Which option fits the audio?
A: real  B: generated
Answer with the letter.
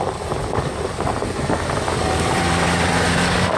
B